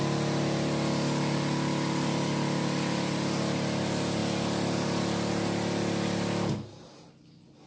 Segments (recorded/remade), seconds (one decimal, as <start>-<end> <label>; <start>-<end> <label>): 0.0-7.7 recorded